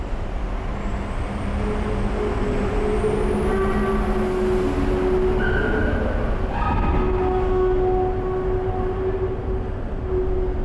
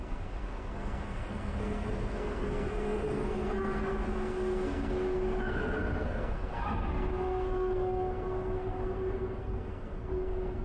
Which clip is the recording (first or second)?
first